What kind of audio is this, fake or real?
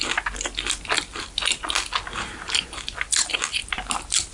real